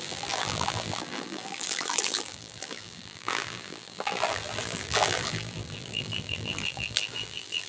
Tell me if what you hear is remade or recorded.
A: remade